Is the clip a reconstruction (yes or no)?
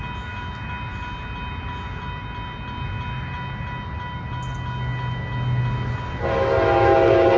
no